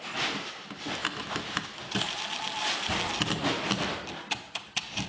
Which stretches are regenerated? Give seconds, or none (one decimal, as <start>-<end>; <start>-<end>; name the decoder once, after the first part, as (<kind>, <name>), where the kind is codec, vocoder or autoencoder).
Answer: none